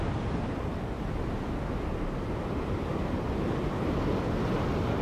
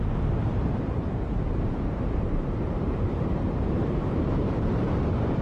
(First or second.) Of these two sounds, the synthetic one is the second